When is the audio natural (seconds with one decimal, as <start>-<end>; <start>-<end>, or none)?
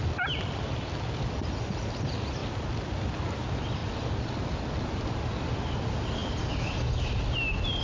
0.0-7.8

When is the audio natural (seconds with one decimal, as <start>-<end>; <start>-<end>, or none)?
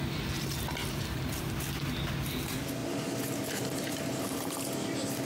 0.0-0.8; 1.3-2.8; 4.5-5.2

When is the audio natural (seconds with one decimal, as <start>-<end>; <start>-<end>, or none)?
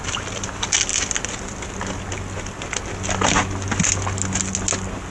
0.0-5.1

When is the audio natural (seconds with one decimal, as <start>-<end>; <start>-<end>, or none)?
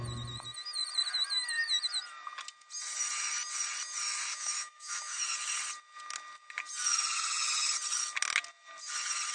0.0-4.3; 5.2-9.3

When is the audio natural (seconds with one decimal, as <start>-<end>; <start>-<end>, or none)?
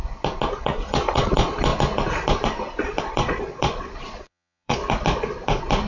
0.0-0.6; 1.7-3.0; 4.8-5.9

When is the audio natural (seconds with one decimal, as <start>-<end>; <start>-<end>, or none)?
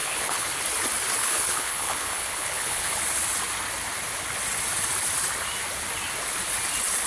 0.6-1.2; 3.0-7.1